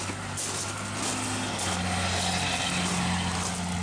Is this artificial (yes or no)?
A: no